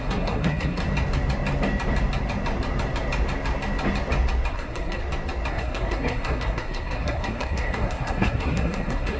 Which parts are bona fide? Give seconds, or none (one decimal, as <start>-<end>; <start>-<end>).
0.8-4.5; 5.0-5.5

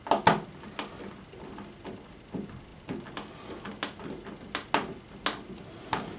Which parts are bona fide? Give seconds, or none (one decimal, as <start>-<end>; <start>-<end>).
0.0-6.2

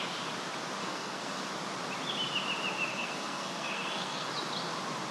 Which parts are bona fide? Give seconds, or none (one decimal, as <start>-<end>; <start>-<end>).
0.0-0.8; 1.5-2.9; 4.3-5.1

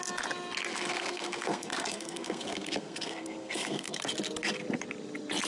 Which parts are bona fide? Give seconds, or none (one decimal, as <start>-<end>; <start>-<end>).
0.0-0.7; 4.0-5.5

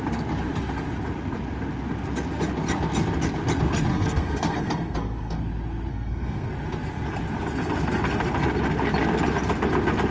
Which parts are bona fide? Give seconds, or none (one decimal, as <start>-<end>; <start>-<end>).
0.0-3.9; 5.4-5.9; 6.5-10.1

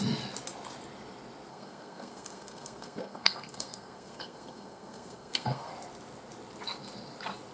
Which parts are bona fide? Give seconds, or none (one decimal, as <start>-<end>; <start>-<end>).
0.0-1.5; 5.7-7.5

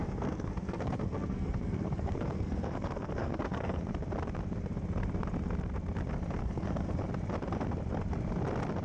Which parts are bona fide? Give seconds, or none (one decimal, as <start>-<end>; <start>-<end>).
3.8-6.4; 7.0-8.8

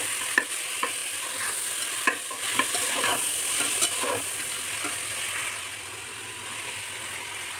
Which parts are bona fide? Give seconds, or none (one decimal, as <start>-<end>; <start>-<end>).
0.0-7.6